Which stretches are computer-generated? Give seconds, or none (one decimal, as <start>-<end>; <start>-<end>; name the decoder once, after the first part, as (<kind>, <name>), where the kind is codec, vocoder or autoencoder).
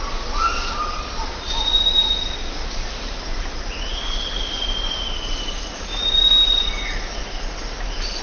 none